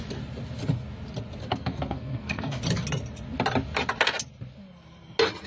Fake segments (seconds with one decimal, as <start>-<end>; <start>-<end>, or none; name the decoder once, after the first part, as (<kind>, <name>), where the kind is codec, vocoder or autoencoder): 1.4-2.6 (codec, SNAC)